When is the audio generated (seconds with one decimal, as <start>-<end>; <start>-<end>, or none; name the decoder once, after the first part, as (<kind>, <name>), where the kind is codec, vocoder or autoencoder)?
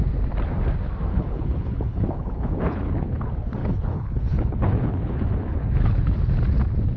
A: 1.1-3.2 (codec, HILCodec); 3.6-6.2